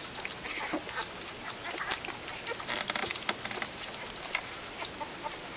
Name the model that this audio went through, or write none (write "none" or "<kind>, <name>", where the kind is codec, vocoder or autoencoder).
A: none